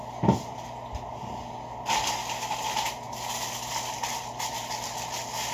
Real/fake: real